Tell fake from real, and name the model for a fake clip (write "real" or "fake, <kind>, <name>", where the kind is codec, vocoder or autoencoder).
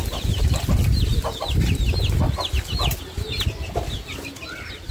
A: real